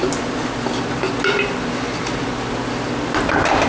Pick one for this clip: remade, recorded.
recorded